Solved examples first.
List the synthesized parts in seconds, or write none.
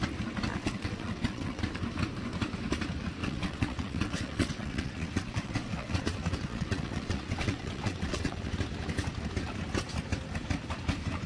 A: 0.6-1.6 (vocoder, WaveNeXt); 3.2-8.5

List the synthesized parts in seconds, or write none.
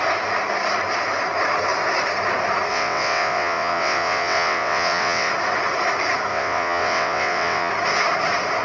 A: 2.7-5.3 (vocoder, WaveNeXt); 6.3-7.7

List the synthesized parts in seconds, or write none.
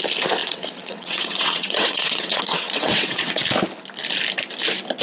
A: 0.4-3.4 (vocoder, WaveNeXt)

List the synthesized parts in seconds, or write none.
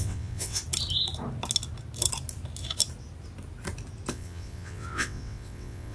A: 0.0-0.6 (vocoder, WaveNeXt); 4.1-5.9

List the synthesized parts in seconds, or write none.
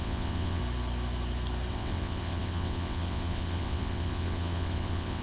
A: 0.0-0.6 (vocoder, WaveNeXt); 1.7-5.2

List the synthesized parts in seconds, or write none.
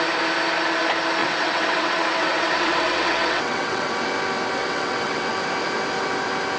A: 1.2-3.9 (vocoder, WaveNeXt); 4.6-5.3